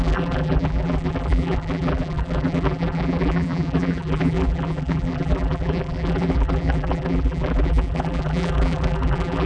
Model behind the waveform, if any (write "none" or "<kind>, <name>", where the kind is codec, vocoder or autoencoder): vocoder, BigVGAN v2